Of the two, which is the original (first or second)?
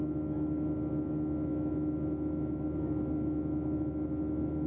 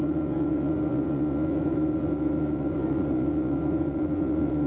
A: first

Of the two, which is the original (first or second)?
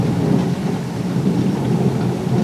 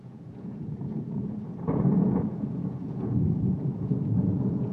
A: first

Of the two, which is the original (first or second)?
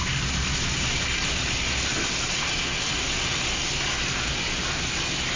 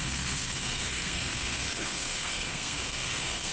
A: first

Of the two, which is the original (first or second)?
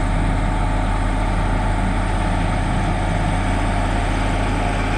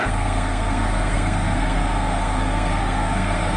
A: first